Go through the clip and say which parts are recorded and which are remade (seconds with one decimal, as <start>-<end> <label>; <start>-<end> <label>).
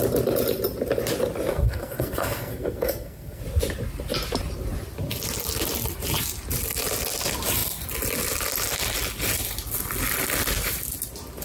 0.0-1.5 recorded; 1.5-3.4 remade; 3.4-11.4 recorded